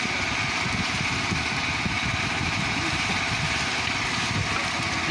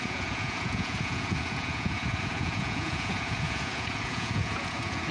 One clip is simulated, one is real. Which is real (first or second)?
first